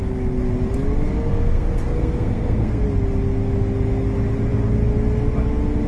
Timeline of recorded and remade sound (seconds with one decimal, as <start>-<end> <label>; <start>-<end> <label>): 0.0-1.3 recorded; 1.3-2.8 remade; 2.8-5.9 recorded